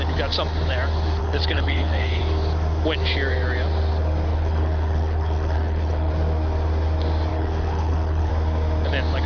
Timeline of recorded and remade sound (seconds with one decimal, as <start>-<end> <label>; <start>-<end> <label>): 0.0-1.2 recorded; 1.2-2.2 remade; 2.2-4.3 recorded; 4.3-6.1 remade; 6.1-7.3 recorded; 7.3-8.3 remade; 8.3-9.3 recorded